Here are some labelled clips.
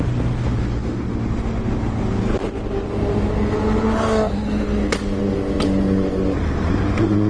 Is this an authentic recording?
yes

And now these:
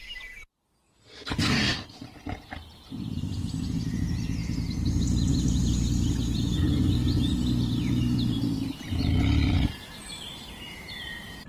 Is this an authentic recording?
yes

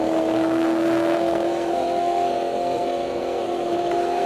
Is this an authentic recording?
no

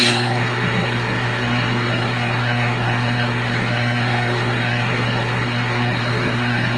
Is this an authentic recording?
no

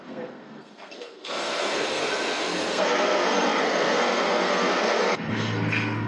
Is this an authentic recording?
no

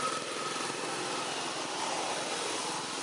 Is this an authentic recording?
yes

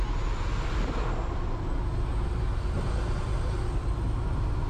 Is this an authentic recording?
yes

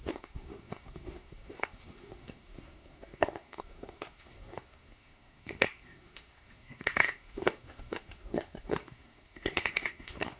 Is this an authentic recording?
no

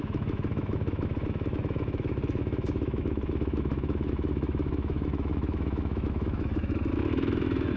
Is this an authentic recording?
no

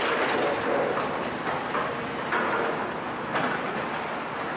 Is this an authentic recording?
yes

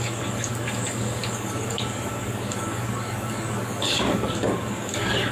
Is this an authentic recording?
no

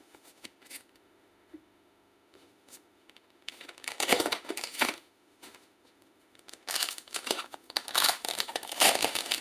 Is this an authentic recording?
no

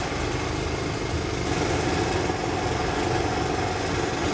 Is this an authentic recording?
yes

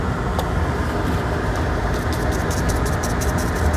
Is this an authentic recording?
yes